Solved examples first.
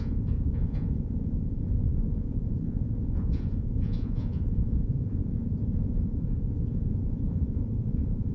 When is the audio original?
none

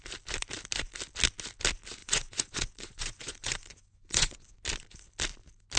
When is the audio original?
0.0-2.0; 4.5-5.8

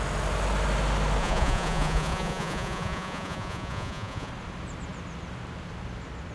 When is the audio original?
0.0-1.2; 4.3-6.3